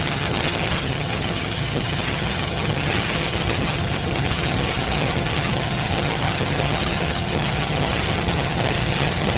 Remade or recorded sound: remade